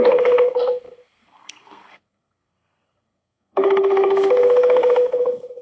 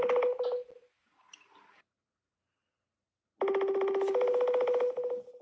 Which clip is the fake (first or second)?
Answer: first